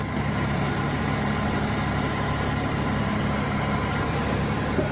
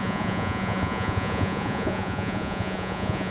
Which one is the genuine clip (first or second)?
first